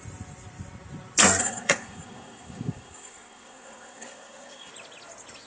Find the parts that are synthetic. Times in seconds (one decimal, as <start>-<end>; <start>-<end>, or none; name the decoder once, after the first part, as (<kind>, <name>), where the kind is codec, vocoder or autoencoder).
1.4-4.7 (codec, SNAC)

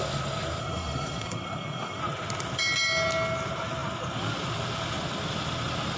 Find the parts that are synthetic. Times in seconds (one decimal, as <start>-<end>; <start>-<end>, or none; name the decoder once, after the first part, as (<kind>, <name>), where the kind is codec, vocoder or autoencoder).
0.6-2.0 (codec, SNAC)

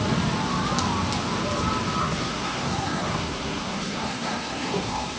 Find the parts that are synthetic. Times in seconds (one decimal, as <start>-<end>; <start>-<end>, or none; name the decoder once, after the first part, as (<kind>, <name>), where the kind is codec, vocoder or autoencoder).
2.0-5.2 (codec, SNAC)

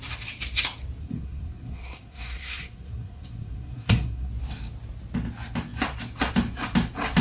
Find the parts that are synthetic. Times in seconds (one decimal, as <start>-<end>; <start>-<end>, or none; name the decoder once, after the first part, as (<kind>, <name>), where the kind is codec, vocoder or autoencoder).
1.0-4.3 (codec, SNAC)